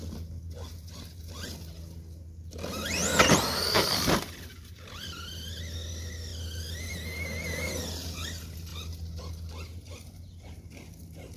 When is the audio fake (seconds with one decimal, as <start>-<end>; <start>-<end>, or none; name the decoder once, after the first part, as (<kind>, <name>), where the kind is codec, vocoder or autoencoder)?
none